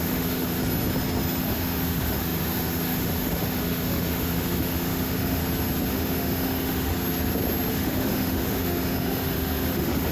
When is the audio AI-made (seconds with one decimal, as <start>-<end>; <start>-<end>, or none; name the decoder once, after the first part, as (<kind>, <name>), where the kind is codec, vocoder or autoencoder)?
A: 0.0-0.6 (autoencoder, DAC-VAE); 1.4-5.4; 5.9-6.9; 7.7-10.1